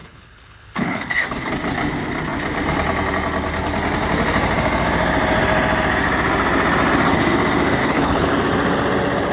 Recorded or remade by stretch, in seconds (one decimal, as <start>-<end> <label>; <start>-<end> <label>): 0.0-1.2 remade; 1.2-7.8 recorded; 7.8-8.3 remade; 8.3-9.3 recorded